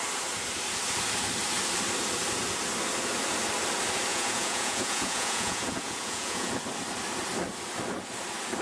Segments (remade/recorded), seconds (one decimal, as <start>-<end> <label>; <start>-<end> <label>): 0.0-4.1 recorded; 4.1-6.5 remade; 6.5-8.6 recorded